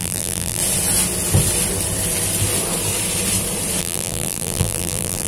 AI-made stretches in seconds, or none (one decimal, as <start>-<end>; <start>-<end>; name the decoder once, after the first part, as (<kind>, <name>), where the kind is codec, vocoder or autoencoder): 0.0-0.6 (vocoder, BigVGAN v2); 3.8-5.3